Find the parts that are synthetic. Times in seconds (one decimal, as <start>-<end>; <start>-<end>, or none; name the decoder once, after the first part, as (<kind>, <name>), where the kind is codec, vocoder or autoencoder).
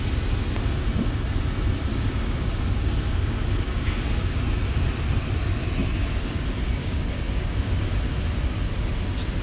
1.9-4.4 (codec, DAC); 6.8-7.9